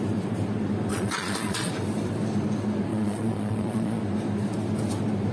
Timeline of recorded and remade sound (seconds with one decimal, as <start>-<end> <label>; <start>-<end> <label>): 0.0-0.9 recorded; 0.9-1.7 remade; 1.7-2.9 recorded; 2.9-4.0 remade; 4.0-5.3 recorded